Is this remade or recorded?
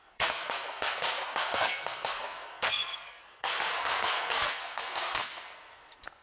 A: remade